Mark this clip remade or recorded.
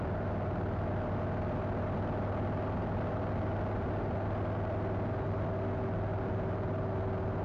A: recorded